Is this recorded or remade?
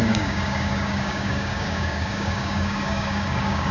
remade